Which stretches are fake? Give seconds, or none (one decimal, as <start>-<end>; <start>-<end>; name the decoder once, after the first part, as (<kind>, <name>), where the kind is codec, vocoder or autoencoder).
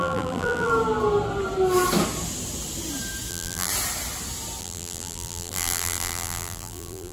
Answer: 0.0-0.7 (vocoder, BigVGAN v2); 3.3-3.7; 4.6-7.1